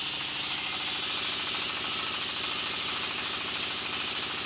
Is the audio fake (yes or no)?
no